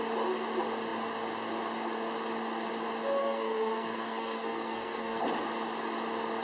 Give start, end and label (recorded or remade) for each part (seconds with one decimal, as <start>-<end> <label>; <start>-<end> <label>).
0.0-3.2 recorded; 3.2-5.2 remade; 5.2-6.4 recorded